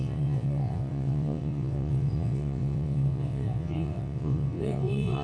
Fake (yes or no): yes